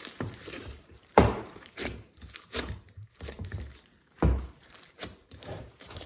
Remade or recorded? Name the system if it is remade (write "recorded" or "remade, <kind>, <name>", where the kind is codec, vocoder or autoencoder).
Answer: remade, vocoder, BigVGAN v2